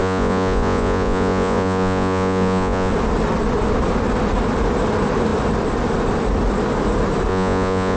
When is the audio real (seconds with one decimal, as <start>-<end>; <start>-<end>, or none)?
2.9-7.3